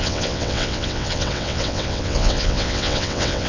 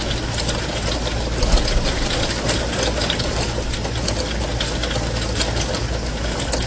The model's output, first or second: first